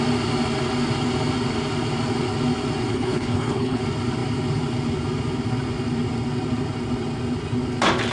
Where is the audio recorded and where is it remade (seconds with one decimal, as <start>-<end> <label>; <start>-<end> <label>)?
0.0-2.9 recorded; 2.9-3.8 remade; 3.8-8.1 recorded